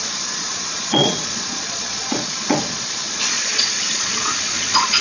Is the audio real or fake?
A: fake